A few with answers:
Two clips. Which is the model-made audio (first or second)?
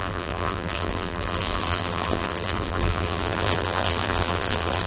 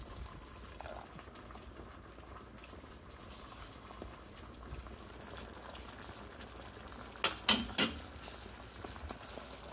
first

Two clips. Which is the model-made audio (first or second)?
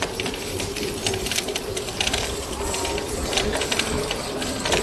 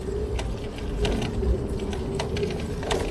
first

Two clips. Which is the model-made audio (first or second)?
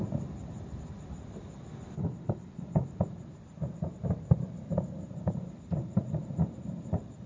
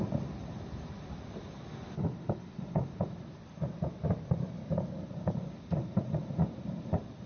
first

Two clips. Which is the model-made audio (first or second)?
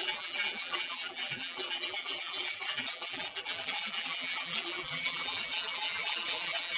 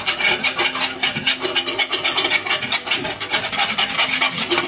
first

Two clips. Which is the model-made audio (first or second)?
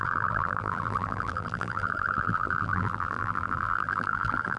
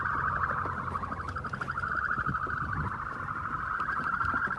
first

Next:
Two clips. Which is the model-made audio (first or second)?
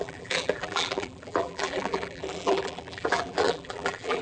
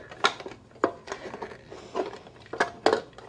first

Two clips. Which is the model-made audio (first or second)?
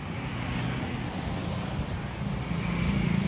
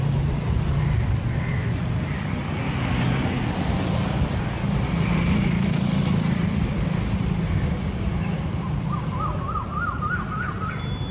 second